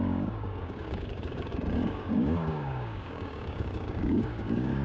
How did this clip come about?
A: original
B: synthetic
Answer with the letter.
B